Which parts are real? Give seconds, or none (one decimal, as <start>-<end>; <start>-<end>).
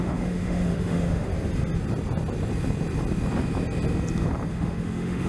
1.3-4.5